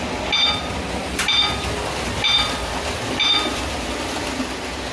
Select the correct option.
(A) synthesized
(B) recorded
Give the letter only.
B